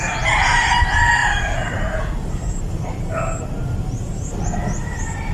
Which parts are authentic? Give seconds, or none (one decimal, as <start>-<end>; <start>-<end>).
0.0-5.3